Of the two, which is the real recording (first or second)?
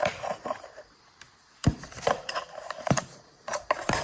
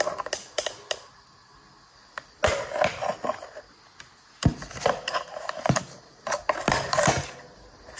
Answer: second